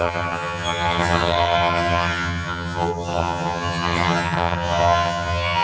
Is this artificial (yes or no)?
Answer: yes